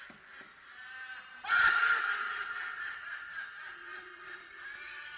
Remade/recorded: recorded